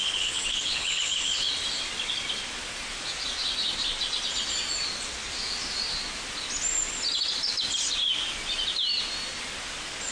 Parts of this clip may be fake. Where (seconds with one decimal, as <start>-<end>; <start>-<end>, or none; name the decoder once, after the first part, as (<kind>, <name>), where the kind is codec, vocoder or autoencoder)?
0.0-1.5 (codec, HILCodec)